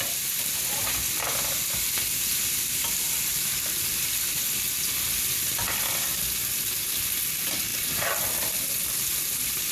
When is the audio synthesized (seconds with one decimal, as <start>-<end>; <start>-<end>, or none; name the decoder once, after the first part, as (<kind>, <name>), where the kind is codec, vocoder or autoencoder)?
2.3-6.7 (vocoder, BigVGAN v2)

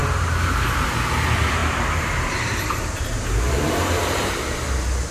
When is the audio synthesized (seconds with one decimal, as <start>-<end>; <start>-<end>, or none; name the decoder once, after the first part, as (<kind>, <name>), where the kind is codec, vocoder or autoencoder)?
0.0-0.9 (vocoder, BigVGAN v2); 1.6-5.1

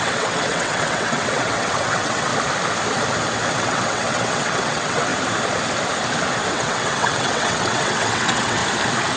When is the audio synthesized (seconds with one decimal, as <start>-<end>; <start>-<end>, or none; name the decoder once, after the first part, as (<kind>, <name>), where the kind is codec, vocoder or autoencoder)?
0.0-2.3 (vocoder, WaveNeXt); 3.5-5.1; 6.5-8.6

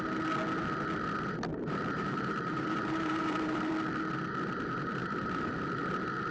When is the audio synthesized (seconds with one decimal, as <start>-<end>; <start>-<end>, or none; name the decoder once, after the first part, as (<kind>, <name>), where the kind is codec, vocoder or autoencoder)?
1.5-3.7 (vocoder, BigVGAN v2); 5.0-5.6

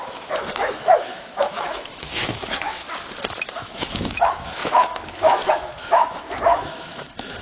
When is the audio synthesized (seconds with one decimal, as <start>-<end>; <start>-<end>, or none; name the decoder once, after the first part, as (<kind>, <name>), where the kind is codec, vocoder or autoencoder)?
0.0-2.8 (autoencoder, DAC-VAE); 3.4-7.4

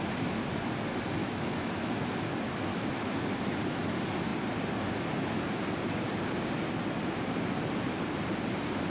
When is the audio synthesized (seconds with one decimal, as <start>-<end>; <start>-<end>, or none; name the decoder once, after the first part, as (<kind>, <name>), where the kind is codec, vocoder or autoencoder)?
1.2-1.9 (autoencoder, DAC-VAE); 2.7-3.2

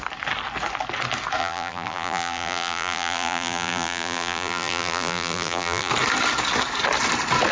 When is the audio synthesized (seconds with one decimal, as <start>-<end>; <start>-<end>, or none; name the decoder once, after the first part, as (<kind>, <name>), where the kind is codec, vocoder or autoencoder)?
1.4-5.9 (vocoder, BigVGAN v2)